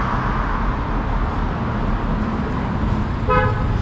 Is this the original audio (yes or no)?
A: yes